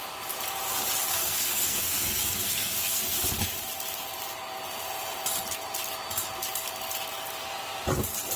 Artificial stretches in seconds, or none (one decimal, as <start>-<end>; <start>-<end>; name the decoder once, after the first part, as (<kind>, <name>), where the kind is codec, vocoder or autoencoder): 1.1-3.0 (codec, SNAC)